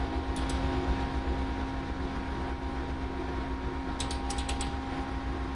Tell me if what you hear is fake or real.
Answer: real